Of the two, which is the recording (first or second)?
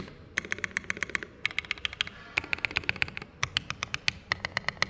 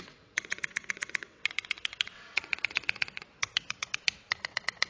first